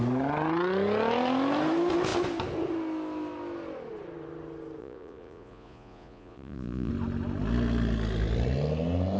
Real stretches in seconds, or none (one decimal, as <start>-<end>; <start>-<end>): 0.0-4.8; 6.9-9.2